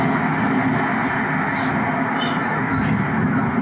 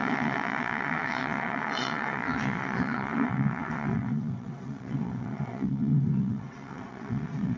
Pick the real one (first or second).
first